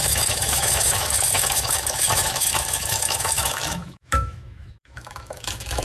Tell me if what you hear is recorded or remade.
remade